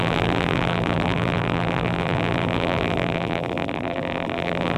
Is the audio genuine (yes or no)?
no